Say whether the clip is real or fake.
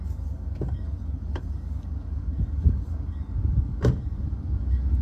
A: fake